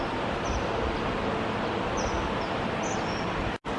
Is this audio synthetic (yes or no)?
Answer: no